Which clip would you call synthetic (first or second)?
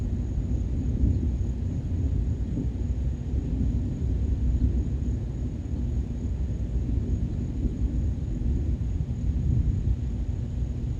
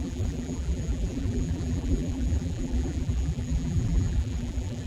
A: second